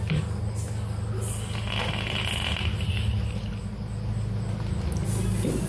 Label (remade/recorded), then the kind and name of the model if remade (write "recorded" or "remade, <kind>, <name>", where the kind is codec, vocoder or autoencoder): recorded